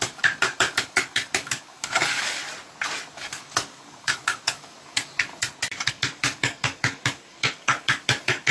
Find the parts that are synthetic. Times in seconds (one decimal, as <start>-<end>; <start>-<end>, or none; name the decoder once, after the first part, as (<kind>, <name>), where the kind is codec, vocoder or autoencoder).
0.0-2.4 (codec, DAC); 3.1-5.3; 5.9-8.5